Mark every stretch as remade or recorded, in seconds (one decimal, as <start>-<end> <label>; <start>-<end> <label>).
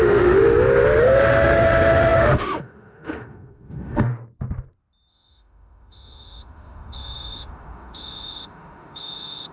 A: 0.0-0.4 remade; 0.4-1.0 recorded; 1.0-4.1 remade; 4.1-5.1 recorded; 5.1-9.5 remade